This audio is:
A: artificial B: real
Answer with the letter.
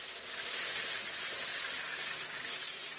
B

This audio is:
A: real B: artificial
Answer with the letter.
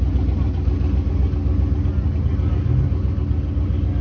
A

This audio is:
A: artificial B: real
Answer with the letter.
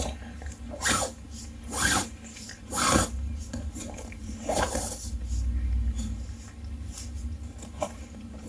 B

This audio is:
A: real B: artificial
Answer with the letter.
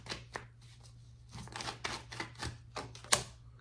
A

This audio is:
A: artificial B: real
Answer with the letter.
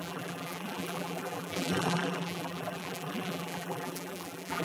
A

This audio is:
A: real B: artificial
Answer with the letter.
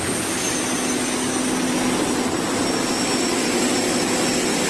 A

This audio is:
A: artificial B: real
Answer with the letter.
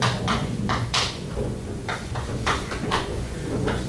A